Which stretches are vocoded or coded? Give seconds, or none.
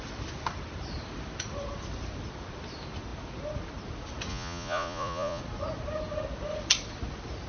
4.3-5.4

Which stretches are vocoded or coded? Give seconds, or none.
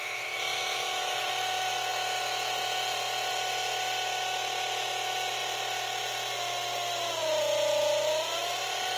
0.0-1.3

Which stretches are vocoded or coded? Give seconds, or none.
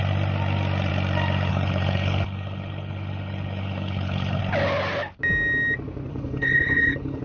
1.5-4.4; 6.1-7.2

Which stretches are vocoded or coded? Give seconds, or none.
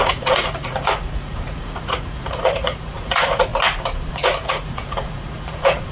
0.0-3.5; 4.1-5.9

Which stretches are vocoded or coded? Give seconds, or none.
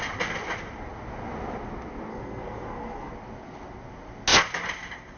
2.1-3.1